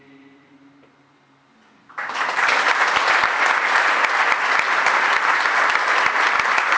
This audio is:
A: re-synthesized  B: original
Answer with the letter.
B